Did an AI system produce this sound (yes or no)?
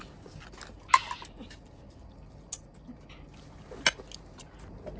no